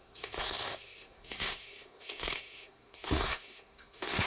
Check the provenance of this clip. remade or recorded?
remade